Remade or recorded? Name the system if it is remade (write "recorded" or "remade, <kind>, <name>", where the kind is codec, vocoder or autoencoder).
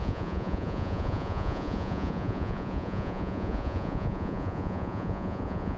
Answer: remade, vocoder, Vocos